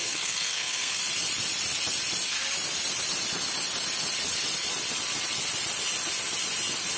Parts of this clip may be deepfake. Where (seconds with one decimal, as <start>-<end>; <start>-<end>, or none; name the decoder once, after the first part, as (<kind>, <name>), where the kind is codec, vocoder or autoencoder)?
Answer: 0.0-1.0 (codec, SNAC)